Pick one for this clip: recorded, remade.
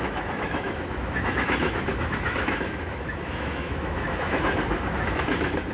remade